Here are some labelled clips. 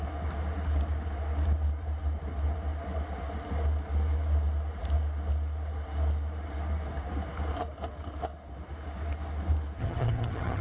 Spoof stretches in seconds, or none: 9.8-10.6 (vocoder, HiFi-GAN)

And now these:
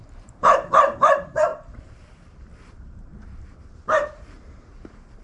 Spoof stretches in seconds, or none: 0.0-5.2 (vocoder, BigVGAN v2)